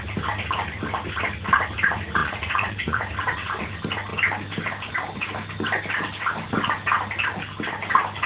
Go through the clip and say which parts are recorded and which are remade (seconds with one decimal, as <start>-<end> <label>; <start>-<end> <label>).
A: 0.0-2.2 recorded; 2.2-3.1 remade; 3.1-8.3 recorded